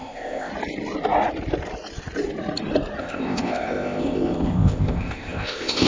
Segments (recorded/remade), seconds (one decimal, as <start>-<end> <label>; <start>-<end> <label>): 0.0-0.5 remade; 0.5-3.0 recorded; 3.0-5.9 remade